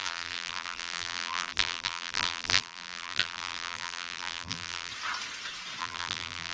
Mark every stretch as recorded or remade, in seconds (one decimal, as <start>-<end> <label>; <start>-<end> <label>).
0.0-4.9 remade; 4.9-5.8 recorded; 5.8-6.5 remade